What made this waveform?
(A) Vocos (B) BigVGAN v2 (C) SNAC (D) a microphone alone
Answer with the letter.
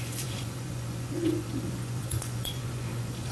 A